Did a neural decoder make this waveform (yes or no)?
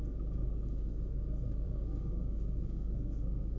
yes